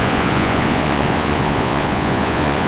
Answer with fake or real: fake